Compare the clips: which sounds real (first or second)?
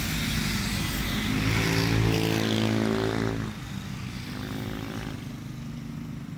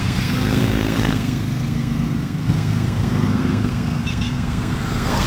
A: first